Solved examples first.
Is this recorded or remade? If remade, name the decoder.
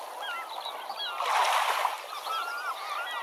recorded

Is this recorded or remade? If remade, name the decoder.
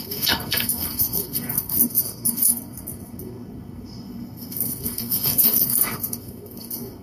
remade, codec, SNAC